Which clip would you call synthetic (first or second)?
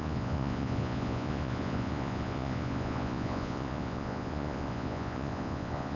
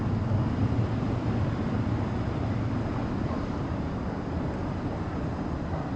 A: first